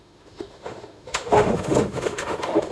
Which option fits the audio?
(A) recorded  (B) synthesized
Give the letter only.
B